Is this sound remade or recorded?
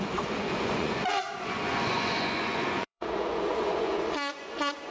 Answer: remade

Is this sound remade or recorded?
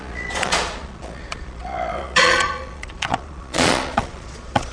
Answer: remade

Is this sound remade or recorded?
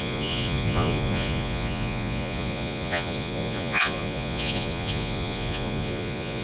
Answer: remade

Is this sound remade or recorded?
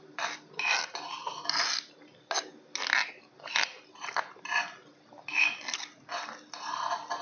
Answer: recorded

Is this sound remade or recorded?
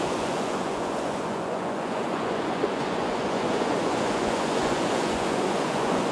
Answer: remade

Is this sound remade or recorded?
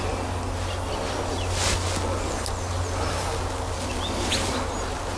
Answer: recorded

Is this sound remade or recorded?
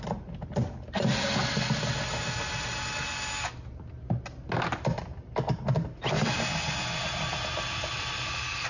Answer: recorded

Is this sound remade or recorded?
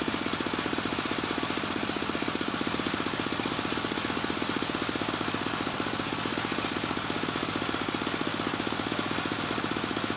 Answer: recorded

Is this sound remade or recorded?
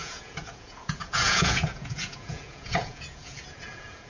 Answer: remade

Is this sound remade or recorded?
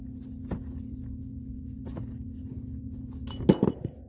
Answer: recorded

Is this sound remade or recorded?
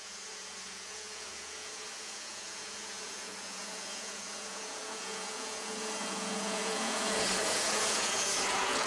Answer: remade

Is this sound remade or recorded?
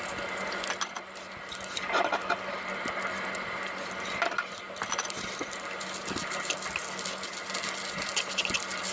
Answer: recorded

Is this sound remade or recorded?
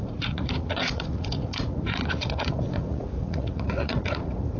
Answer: remade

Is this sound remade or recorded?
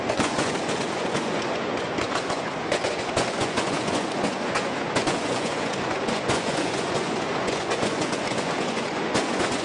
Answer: remade